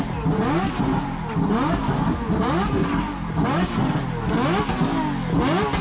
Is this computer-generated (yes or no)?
no